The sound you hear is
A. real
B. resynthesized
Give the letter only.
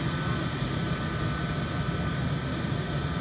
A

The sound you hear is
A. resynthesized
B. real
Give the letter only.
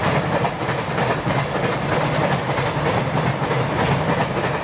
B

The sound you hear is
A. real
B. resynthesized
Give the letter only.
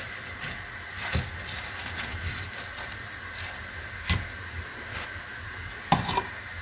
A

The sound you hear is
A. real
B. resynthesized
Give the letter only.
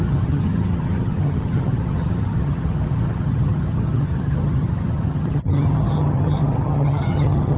B